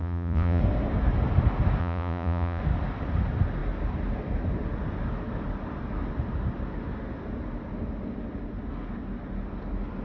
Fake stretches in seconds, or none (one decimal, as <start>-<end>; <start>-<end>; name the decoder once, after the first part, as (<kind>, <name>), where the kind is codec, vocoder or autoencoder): 0.0-0.6 (vocoder, Vocos); 1.8-2.6